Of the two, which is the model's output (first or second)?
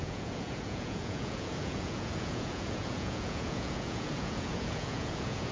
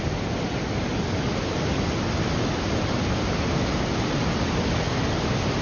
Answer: first